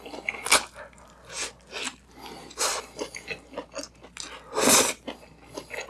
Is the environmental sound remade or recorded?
recorded